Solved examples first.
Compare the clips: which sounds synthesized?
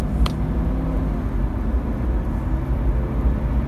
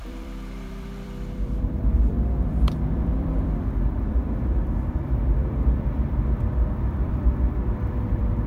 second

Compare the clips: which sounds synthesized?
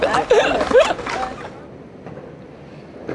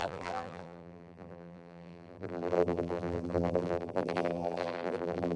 second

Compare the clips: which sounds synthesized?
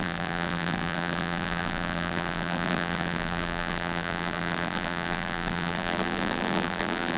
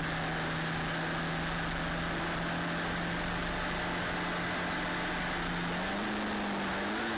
first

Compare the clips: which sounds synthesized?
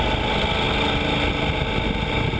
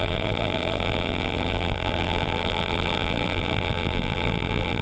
second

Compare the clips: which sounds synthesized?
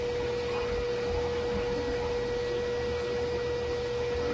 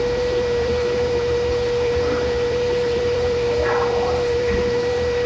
second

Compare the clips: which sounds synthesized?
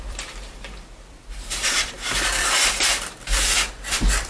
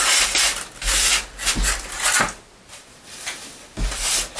first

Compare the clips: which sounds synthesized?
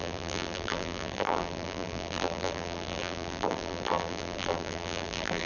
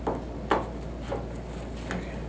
first